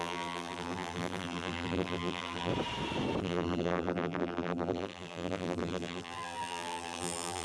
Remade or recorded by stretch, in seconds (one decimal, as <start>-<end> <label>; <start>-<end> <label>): 0.0-2.5 remade; 2.5-3.2 recorded; 3.2-7.4 remade